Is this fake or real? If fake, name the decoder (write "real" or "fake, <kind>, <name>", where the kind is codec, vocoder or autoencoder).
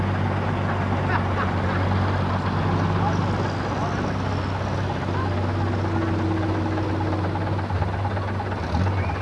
real